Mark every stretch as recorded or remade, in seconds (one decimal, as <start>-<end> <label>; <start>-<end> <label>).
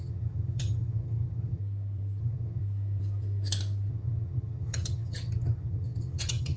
0.0-1.6 remade; 1.6-2.2 recorded; 2.2-2.6 remade; 2.6-3.9 recorded; 3.9-6.6 remade